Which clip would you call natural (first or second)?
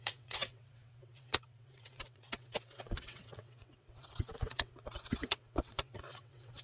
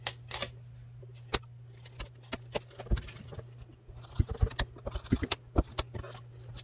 second